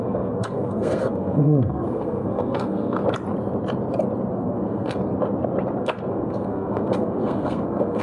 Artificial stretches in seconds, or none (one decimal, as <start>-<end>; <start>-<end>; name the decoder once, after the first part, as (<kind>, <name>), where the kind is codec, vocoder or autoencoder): 0.0-3.0 (codec, SNAC); 4.3-5.0; 5.8-8.0